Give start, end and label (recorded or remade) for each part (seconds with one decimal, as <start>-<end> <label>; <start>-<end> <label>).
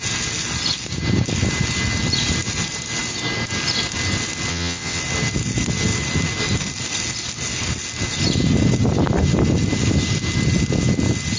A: 0.0-4.5 recorded; 4.5-5.0 remade; 5.0-11.4 recorded